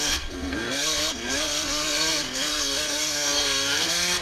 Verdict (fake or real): fake